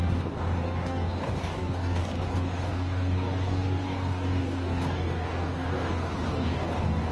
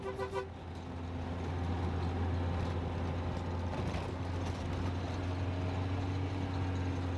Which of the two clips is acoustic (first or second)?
second